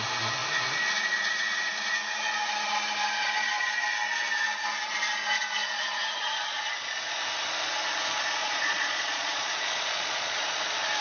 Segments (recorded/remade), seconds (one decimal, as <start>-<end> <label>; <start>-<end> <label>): 0.0-8.4 recorded; 8.4-10.6 remade; 10.6-11.0 recorded